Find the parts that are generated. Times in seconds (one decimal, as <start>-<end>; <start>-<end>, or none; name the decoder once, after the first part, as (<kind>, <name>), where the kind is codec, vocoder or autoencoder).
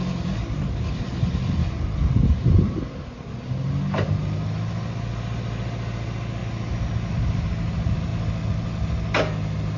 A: 1.6-3.1 (vocoder, BigVGAN v2)